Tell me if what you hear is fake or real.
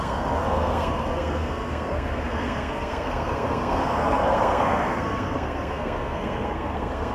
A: fake